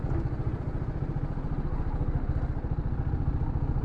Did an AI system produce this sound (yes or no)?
no